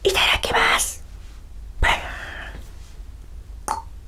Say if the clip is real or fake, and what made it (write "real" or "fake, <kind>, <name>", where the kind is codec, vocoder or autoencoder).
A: real